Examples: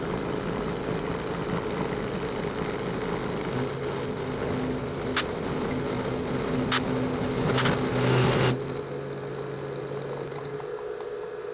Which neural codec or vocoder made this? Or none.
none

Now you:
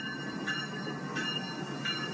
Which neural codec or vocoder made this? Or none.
none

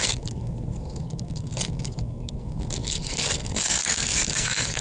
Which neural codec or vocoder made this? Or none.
codec, SNAC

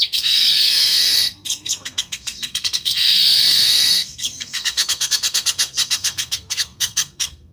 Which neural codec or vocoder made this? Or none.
codec, SNAC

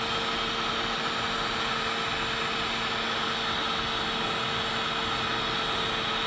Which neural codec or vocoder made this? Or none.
none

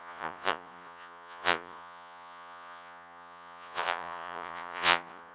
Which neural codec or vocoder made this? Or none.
vocoder, Vocos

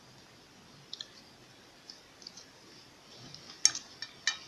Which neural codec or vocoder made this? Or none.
none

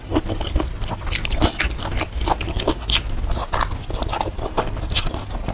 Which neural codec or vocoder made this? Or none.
none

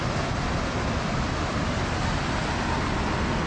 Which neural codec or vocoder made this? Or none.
none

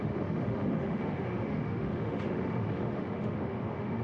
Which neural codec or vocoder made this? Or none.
autoencoder, DAC-VAE